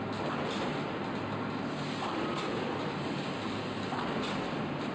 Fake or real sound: real